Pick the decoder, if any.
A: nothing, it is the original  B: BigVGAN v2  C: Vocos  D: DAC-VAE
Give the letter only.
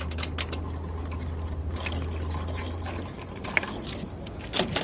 A